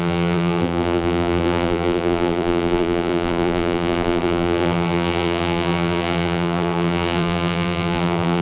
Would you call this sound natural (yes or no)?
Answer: no